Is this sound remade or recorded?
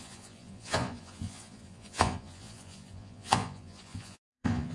remade